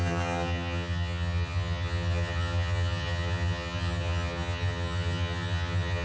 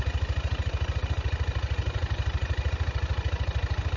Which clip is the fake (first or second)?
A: first